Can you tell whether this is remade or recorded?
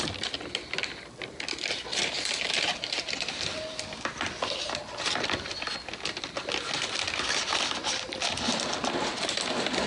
recorded